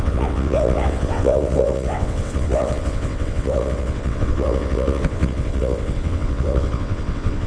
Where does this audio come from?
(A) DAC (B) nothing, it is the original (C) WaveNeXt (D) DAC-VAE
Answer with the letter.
C